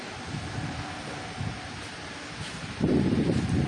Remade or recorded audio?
recorded